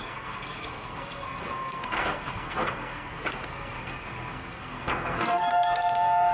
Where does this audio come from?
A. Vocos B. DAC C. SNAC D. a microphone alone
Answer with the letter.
C